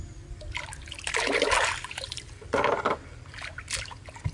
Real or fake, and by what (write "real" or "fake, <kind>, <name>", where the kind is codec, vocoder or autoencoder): real